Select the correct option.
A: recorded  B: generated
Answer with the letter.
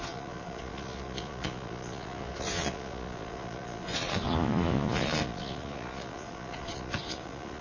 B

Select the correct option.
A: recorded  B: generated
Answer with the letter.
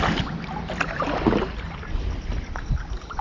A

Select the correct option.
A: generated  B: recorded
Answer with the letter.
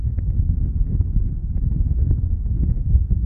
A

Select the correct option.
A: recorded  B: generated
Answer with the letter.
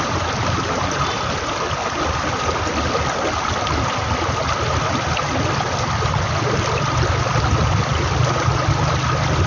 A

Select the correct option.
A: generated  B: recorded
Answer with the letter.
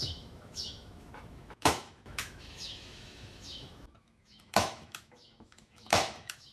A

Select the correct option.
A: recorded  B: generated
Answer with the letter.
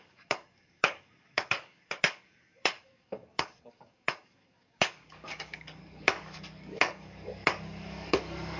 B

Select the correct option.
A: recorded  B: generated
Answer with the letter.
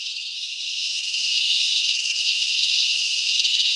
B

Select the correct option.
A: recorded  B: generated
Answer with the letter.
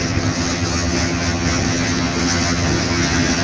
B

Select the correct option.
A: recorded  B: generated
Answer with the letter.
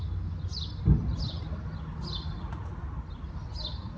A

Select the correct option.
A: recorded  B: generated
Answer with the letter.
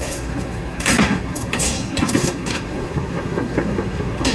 B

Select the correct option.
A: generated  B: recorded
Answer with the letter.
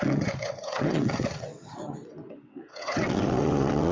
A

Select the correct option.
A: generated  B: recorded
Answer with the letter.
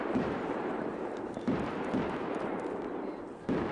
A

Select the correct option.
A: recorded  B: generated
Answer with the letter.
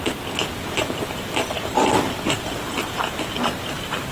A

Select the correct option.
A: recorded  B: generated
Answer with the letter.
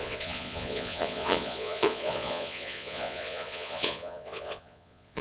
B